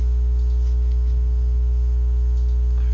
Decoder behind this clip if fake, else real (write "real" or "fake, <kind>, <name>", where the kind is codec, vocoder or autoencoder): real